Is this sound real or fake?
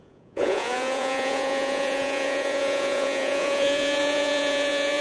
fake